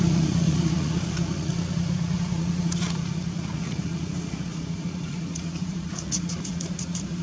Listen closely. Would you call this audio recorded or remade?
remade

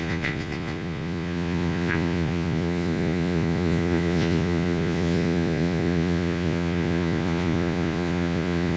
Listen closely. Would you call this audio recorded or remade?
remade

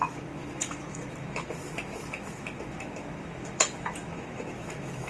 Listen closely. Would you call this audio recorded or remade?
remade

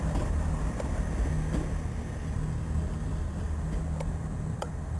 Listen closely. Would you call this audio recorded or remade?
recorded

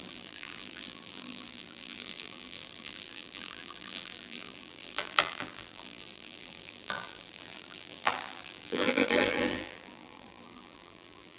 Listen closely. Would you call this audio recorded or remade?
remade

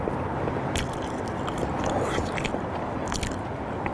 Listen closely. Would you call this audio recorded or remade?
recorded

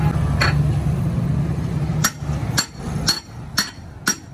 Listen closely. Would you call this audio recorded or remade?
recorded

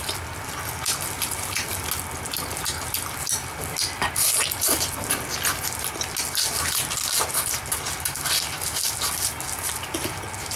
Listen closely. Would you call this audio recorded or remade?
recorded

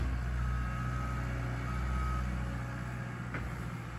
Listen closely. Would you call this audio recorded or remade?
recorded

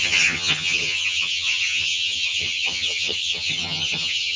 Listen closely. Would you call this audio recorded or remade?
remade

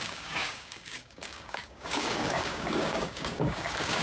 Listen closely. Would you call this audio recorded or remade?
remade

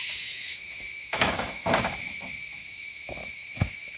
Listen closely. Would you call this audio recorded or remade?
remade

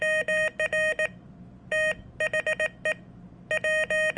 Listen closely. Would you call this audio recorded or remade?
recorded